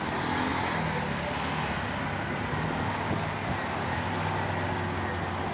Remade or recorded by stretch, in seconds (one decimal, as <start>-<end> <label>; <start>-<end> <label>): 0.0-5.5 recorded